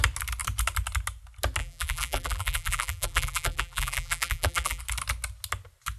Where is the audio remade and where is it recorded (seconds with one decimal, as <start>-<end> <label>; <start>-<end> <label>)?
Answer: 0.0-1.6 recorded; 1.6-4.8 remade; 4.8-6.0 recorded